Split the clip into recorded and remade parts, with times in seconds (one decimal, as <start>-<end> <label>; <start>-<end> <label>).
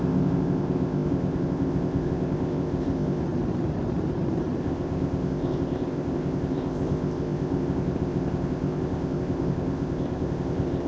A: 0.0-3.2 remade; 3.2-4.6 recorded; 4.6-10.9 remade